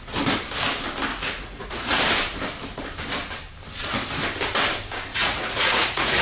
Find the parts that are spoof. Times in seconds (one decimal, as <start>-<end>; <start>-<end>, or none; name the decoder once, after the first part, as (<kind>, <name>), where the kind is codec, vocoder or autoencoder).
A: 1.1-2.0 (vocoder, Vocos); 5.1-6.2